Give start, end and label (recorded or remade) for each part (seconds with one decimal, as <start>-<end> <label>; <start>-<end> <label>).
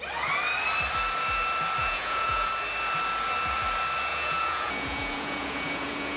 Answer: 0.0-1.8 recorded; 1.8-2.5 remade; 2.5-4.1 recorded; 4.1-6.2 remade